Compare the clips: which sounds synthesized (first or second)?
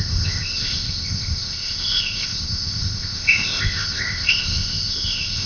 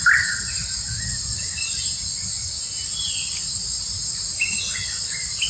first